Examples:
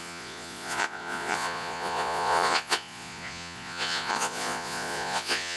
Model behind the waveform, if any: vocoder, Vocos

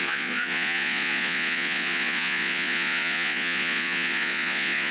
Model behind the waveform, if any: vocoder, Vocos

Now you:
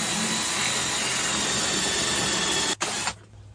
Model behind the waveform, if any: none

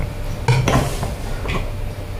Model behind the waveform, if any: none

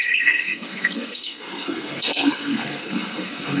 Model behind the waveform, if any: codec, SNAC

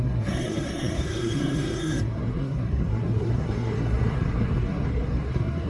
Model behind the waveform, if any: codec, SNAC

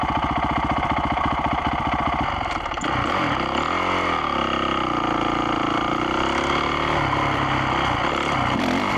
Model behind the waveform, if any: none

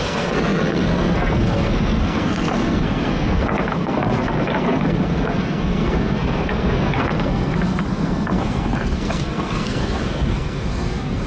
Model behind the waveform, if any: codec, SNAC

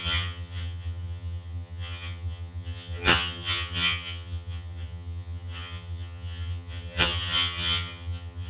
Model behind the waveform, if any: vocoder, HiFi-GAN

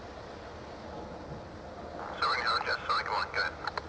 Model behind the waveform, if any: none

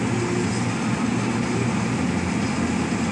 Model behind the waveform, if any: none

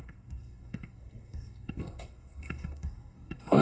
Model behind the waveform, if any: codec, SNAC